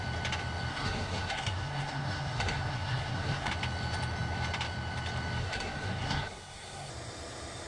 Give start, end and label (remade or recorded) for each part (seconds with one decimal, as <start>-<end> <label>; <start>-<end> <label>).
0.0-0.7 recorded; 0.7-3.5 remade; 3.5-5.4 recorded; 5.4-6.9 remade; 6.9-7.7 recorded